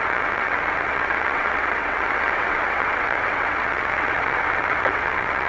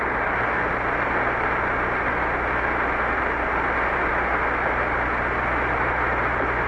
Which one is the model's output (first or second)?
first